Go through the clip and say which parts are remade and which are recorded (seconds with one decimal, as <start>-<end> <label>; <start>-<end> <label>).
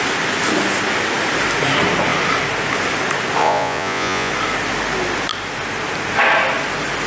0.0-3.4 recorded; 3.4-4.3 remade; 4.3-7.1 recorded